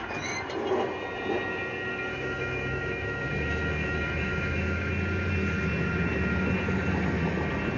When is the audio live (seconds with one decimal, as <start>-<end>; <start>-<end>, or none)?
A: 0.0-2.1; 4.9-7.8